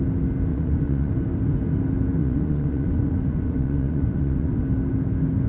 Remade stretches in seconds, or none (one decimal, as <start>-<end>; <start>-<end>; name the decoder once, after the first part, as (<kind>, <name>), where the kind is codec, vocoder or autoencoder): 0.5-1.1 (vocoder, Vocos); 2.2-4.6